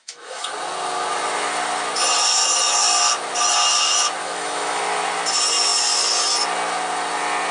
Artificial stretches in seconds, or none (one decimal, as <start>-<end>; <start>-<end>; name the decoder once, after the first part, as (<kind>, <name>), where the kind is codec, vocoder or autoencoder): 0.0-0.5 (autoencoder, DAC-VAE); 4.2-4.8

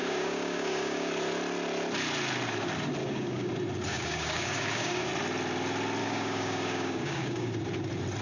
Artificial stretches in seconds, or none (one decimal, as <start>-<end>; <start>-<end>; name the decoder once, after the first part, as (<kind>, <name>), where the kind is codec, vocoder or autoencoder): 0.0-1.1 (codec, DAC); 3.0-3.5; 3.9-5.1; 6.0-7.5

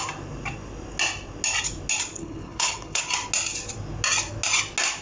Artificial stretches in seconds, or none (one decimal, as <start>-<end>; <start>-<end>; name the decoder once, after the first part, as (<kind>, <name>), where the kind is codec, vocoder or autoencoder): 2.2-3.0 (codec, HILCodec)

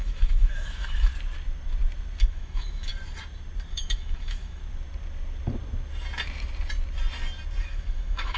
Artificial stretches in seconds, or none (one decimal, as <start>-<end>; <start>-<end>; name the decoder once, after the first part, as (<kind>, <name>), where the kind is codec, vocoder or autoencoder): 0.0-1.1 (autoencoder, DAC-VAE); 2.2-2.9; 3.7-4.6; 7.6-8.4

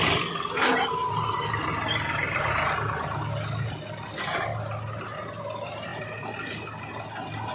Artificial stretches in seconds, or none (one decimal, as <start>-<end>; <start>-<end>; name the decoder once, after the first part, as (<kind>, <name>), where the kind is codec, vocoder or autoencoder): none

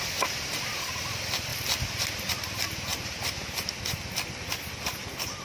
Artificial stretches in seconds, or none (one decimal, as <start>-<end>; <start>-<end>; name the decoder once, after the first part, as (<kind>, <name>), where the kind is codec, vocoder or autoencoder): none